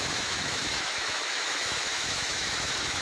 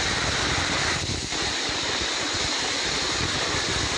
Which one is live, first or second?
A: second